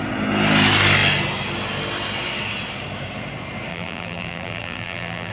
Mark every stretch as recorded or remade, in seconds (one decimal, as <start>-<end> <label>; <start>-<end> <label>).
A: 0.0-3.7 recorded; 3.7-5.3 remade